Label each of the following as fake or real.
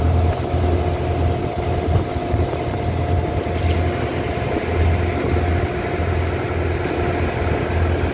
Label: real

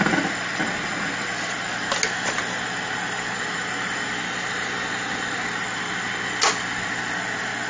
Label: real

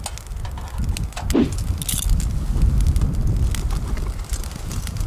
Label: real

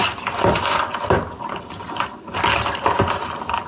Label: real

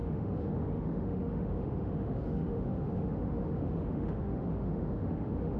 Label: fake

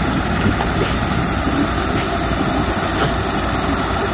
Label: real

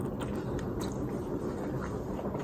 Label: real